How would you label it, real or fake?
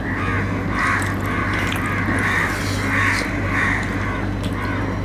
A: real